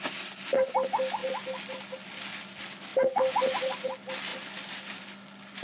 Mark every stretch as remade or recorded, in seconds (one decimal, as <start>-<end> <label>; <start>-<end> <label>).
0.0-5.6 recorded